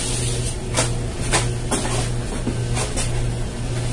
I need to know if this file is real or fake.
real